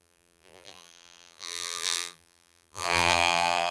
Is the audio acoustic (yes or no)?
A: no